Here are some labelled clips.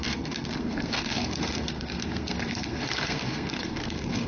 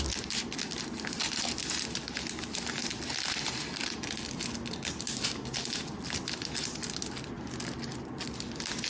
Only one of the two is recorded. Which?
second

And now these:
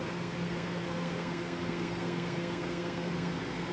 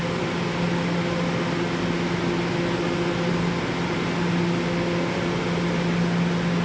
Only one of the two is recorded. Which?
second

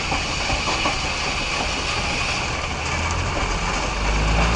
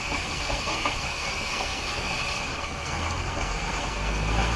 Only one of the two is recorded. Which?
first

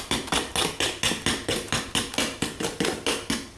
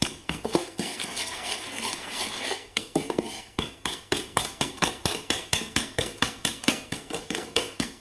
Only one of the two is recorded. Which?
first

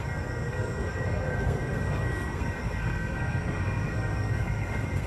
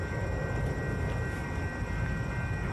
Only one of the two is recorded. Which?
second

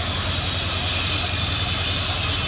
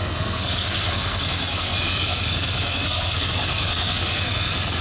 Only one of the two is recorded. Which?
first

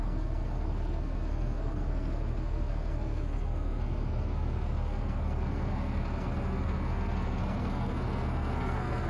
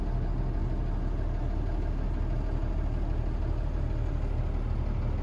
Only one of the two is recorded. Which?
second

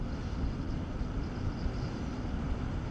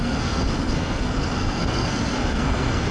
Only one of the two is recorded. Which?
first